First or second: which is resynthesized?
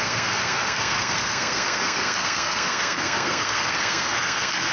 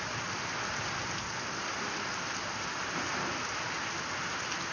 first